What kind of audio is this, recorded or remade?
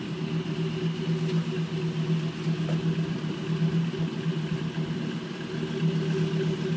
recorded